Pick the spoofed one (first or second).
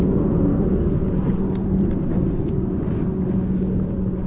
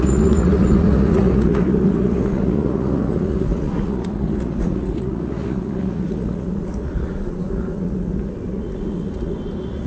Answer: second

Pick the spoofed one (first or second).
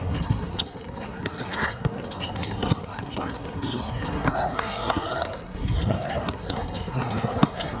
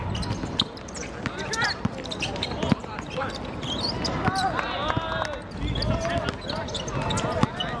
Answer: first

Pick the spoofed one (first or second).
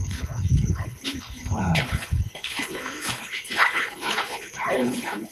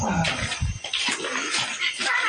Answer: first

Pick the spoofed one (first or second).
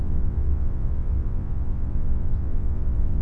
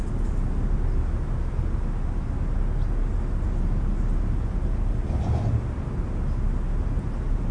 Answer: first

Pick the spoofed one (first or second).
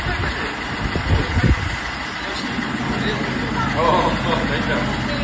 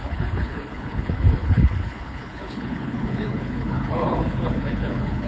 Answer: second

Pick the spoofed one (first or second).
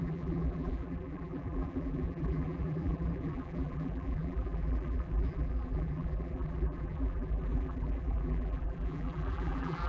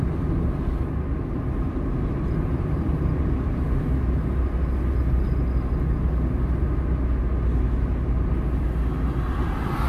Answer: first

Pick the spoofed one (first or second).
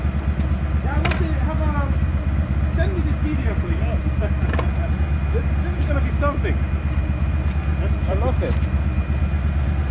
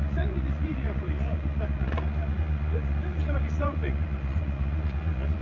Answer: second